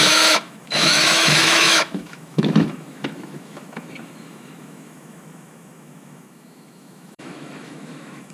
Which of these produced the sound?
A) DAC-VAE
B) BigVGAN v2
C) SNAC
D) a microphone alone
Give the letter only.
A